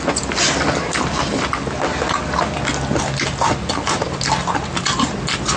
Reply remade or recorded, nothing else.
recorded